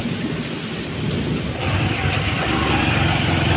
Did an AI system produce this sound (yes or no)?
no